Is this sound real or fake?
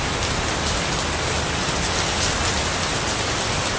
real